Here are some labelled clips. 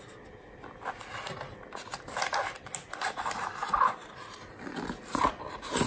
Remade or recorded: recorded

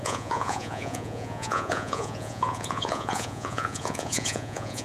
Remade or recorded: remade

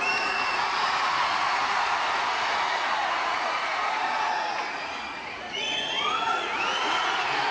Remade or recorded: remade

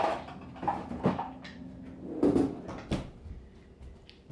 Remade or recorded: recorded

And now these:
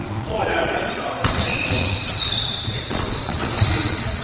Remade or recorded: remade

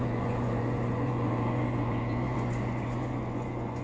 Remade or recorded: remade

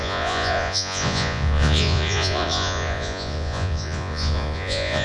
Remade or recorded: remade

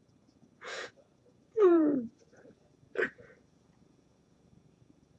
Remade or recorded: remade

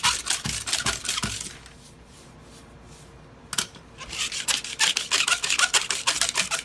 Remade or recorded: recorded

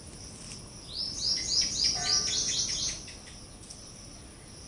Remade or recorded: recorded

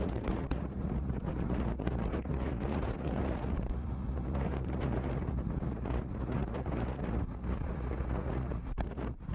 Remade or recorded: remade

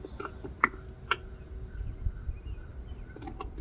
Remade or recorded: recorded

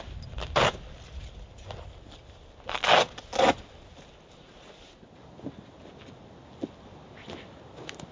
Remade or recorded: recorded